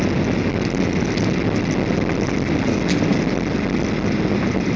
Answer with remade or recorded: recorded